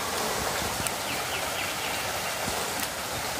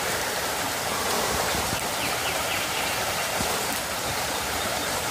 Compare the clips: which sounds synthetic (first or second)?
second